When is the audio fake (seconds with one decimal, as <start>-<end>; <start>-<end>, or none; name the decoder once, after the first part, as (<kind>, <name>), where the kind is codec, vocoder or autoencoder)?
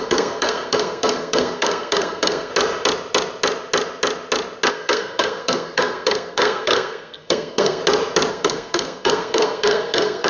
0.0-2.5 (codec, SNAC); 4.7-7.8; 8.3-10.3